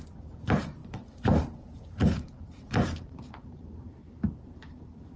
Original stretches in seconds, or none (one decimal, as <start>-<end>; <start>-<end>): 0.0-0.8; 3.9-5.2